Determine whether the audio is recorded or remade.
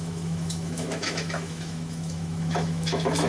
remade